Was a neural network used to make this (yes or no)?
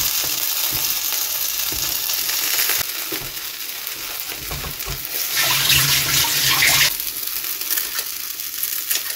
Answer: no